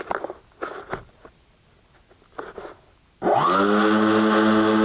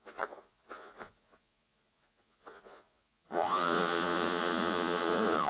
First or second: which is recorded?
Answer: first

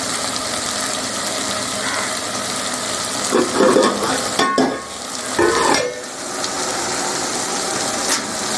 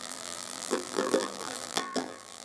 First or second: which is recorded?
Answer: first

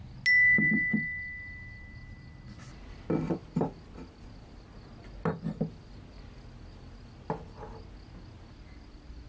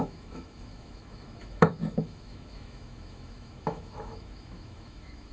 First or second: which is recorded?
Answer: first